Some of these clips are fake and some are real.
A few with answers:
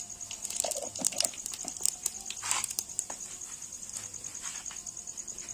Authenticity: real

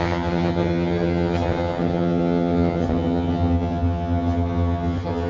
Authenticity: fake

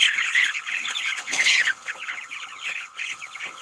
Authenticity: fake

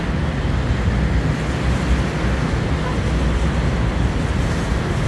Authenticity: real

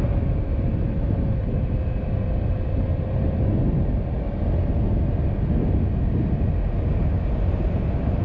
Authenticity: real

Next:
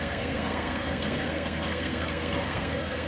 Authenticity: fake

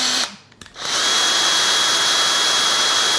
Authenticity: real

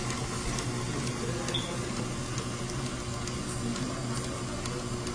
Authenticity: real